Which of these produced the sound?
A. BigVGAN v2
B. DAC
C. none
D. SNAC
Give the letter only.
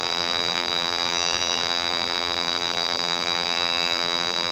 A